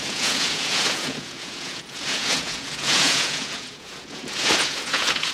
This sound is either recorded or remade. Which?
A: remade